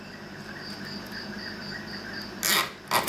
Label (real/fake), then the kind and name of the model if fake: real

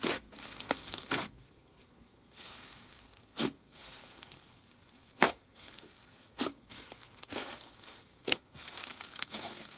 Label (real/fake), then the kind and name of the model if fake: fake, codec, SNAC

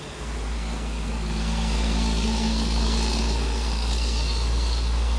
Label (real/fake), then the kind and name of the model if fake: fake, codec, SNAC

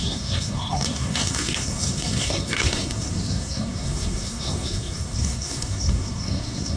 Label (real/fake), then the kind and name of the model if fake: fake, codec, SNAC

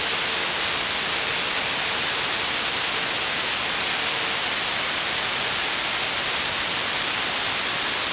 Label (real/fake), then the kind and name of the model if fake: real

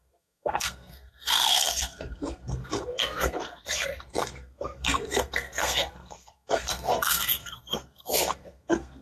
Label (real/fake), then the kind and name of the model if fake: fake, codec, SNAC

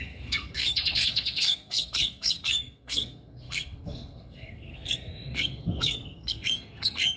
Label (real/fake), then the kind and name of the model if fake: fake, codec, SNAC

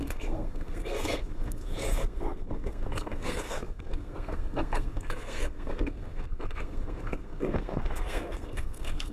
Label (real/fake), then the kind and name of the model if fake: fake, codec, SNAC